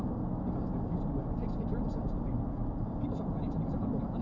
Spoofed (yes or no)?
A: no